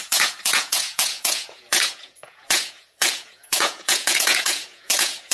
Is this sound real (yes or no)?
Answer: no